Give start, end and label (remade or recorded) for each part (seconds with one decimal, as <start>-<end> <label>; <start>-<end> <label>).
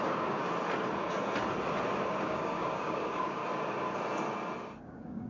0.0-0.4 remade; 0.4-2.2 recorded; 2.2-3.4 remade; 3.4-4.8 recorded; 4.8-5.3 remade